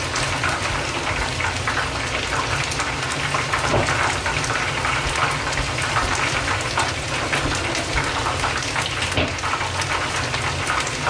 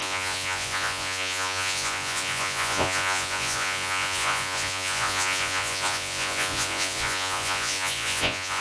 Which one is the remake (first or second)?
second